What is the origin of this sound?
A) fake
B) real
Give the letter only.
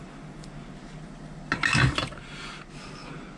B